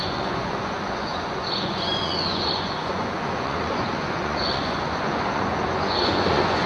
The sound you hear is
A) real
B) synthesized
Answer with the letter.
B